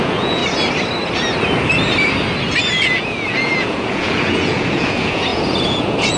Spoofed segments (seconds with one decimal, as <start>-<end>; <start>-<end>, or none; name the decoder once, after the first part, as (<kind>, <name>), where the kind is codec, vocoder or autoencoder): 0.0-0.4 (vocoder, Vocos); 2.6-6.2

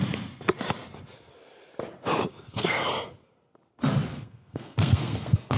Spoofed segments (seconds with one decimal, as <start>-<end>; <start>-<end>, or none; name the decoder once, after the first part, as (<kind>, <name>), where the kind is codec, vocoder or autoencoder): 2.3-2.9 (codec, SNAC); 4.1-5.6